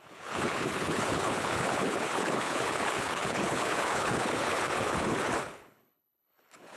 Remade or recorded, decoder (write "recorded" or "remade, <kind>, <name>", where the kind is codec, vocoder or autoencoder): remade, codec, HILCodec